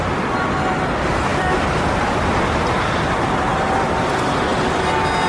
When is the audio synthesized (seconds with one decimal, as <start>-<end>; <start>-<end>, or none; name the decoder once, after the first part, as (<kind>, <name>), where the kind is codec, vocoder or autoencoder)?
1.3-2.0 (vocoder, BigVGAN v2)